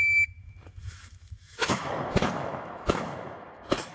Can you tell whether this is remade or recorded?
remade